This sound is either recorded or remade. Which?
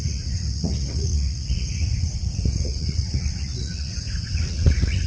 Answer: remade